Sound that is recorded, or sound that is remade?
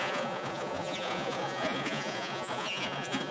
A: remade